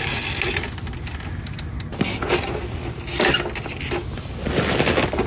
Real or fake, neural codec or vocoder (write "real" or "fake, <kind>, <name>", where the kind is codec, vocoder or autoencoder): real